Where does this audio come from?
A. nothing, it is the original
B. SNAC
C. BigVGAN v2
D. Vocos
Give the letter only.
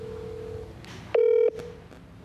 A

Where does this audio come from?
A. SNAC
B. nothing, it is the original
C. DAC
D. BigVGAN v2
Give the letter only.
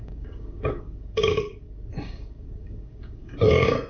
C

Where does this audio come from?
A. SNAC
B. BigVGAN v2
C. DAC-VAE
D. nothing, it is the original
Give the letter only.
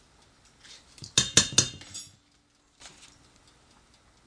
D